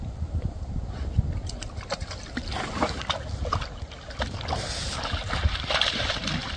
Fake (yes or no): no